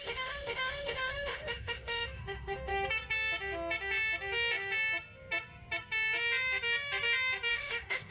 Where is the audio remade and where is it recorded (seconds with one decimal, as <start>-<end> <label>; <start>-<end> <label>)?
0.0-2.7 remade; 2.7-7.5 recorded; 7.5-8.1 remade